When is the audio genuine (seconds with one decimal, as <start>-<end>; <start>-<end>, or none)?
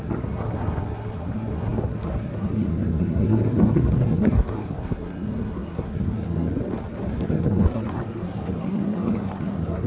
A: 6.6-7.1